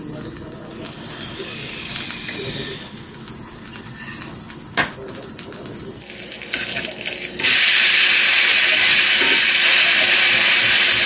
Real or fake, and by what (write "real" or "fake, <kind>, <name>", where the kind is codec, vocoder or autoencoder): real